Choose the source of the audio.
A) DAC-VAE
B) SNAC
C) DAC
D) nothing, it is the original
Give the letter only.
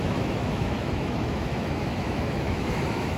A